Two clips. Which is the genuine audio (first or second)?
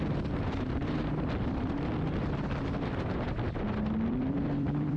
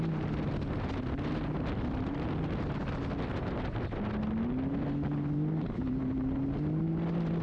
second